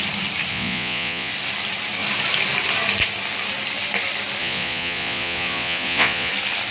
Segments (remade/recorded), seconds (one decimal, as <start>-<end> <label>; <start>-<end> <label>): 0.0-0.5 recorded; 0.5-1.3 remade; 1.3-4.4 recorded; 4.4-6.3 remade; 6.3-6.7 recorded